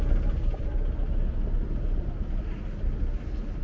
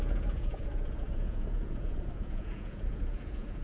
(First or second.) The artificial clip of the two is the second